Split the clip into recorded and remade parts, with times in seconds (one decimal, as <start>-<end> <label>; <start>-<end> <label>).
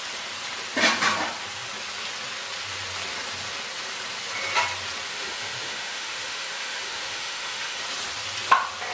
0.0-5.1 recorded; 5.1-7.8 remade; 7.8-8.9 recorded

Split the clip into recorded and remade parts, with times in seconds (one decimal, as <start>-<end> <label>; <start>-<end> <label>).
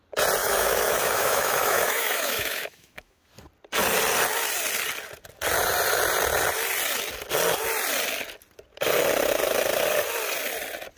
0.0-0.4 recorded; 0.4-3.3 remade; 3.3-11.0 recorded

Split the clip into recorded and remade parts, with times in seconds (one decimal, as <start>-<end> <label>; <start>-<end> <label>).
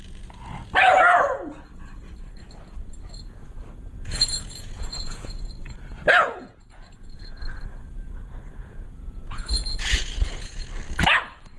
0.0-4.0 recorded; 4.0-5.5 remade; 5.5-6.2 recorded; 6.2-7.4 remade; 7.4-8.6 recorded; 8.6-10.6 remade; 10.6-11.6 recorded